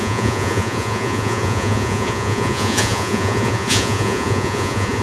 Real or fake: fake